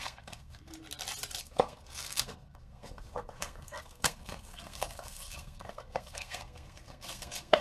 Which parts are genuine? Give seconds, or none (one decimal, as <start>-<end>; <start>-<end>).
0.7-1.4